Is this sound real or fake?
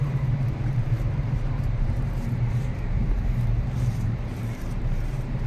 fake